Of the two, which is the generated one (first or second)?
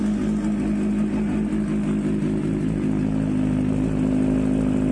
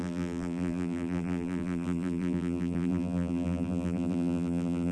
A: second